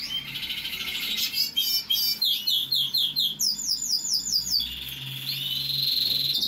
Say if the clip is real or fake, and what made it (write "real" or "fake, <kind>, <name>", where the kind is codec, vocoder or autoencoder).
real